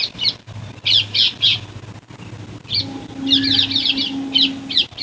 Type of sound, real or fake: real